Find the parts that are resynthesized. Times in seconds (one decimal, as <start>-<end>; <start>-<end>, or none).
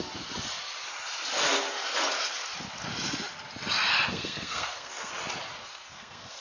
4.1-5.1; 5.6-6.4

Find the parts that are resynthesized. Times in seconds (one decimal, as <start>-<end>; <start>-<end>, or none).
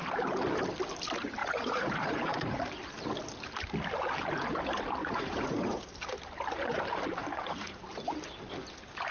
1.4-2.6; 5.0-5.9; 7.2-7.8